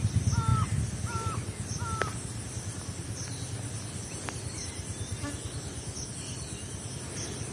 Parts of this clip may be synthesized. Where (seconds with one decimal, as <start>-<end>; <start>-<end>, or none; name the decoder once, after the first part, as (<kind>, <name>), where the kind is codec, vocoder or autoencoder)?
none